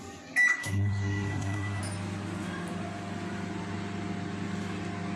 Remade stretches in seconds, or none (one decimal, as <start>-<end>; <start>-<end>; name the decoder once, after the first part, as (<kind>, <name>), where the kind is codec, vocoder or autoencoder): 0.6-1.8 (codec, SNAC)